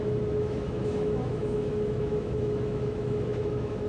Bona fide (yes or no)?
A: no